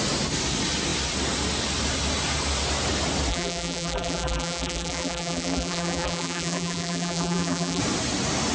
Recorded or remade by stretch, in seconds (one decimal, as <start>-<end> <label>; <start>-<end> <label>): 0.0-3.3 recorded; 3.3-7.8 remade; 7.8-8.5 recorded